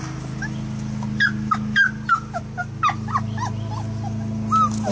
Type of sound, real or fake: real